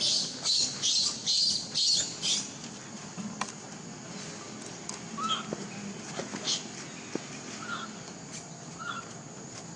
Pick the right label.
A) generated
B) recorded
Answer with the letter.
B